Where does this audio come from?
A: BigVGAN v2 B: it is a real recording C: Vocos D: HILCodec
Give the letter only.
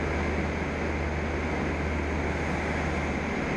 B